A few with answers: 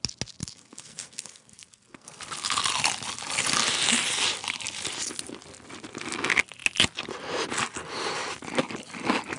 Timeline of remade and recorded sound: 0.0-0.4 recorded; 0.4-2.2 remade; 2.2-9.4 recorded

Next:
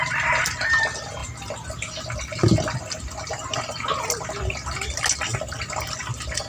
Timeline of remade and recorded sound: 0.0-6.5 recorded